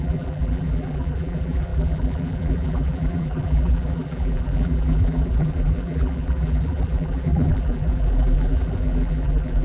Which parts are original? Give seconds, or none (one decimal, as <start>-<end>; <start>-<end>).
none